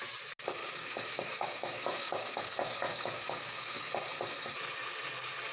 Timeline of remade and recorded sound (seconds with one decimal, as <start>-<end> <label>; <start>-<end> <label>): 0.0-0.6 recorded; 0.6-3.9 remade; 3.9-5.5 recorded